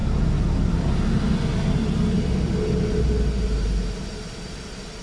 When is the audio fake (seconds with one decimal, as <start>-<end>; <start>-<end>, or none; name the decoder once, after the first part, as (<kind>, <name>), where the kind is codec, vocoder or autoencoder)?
none